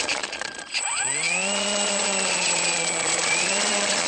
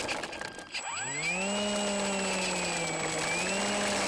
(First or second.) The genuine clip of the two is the second